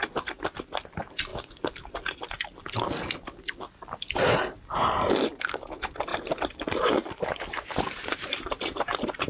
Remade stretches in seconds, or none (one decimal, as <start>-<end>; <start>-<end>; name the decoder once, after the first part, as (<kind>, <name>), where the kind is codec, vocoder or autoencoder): 6.1-9.3 (vocoder, BigVGAN v2)